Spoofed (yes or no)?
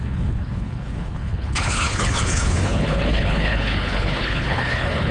yes